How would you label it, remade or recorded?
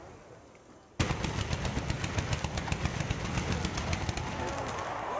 recorded